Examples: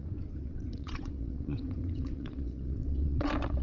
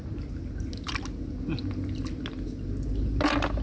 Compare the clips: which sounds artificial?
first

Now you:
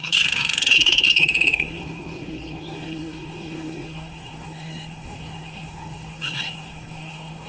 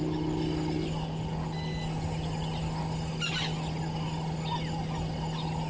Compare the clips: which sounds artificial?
first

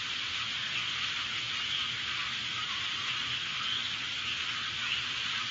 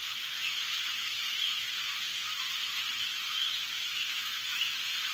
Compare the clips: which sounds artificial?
second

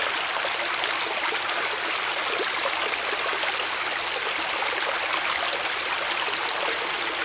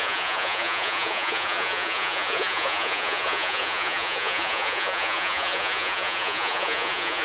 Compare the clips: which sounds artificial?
second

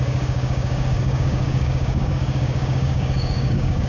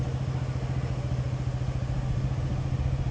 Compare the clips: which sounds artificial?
first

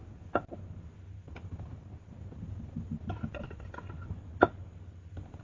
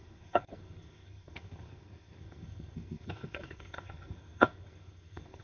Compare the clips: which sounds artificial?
second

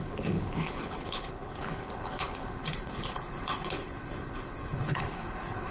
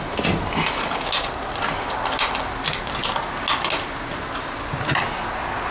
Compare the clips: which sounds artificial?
first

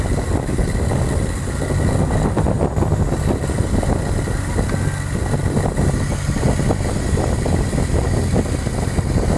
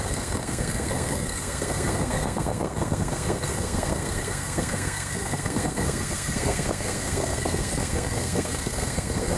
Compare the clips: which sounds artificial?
second